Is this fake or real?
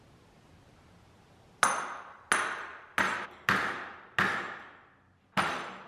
real